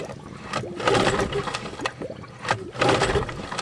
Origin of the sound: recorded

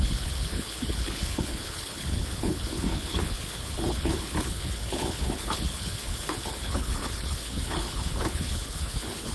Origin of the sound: remade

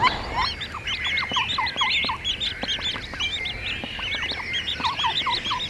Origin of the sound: recorded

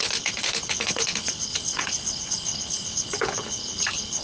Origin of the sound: remade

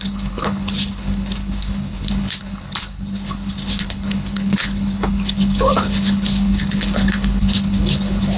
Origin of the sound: remade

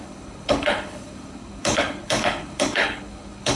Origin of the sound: remade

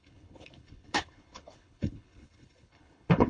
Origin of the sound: remade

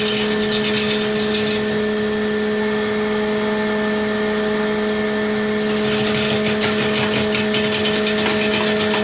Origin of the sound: recorded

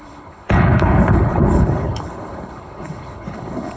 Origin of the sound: remade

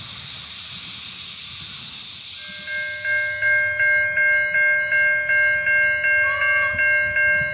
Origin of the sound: recorded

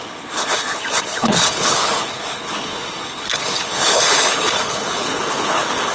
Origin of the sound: remade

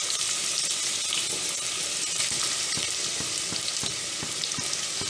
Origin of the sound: recorded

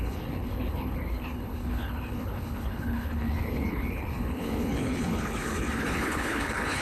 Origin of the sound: remade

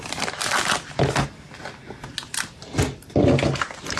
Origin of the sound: recorded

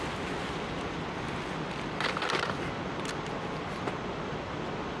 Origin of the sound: recorded